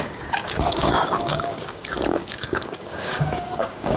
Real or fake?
fake